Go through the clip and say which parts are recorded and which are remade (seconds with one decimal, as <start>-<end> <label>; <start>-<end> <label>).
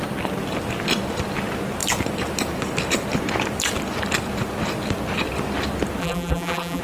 0.0-6.0 recorded; 6.0-6.8 remade